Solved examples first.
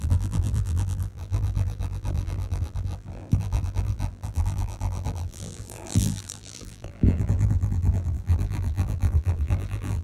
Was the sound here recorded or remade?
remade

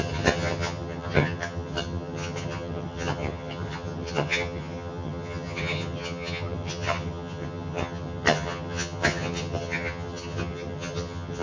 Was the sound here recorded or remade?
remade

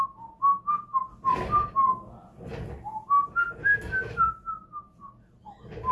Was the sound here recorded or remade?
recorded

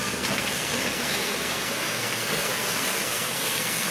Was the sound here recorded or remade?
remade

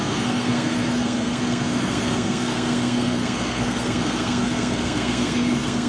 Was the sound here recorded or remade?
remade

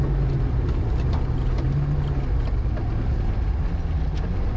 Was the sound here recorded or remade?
recorded